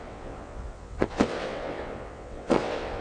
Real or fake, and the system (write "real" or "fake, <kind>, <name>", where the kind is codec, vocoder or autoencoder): fake, vocoder, WaveNeXt